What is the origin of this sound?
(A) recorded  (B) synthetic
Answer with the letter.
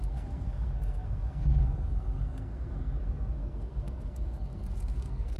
B